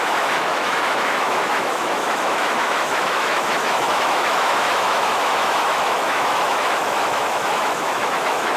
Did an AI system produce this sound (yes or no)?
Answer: yes